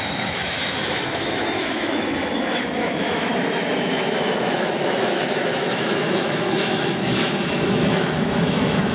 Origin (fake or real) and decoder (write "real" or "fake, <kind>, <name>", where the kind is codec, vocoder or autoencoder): fake, autoencoder, DAC-VAE